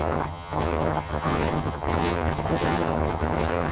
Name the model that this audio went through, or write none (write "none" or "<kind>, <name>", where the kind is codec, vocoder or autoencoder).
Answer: vocoder, HiFi-GAN